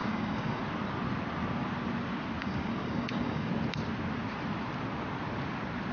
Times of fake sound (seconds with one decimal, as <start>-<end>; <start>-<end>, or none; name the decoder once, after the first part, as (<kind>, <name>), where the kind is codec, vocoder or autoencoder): 0.0-0.6 (codec, DAC); 2.4-3.5